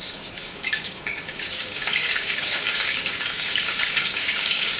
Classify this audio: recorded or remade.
remade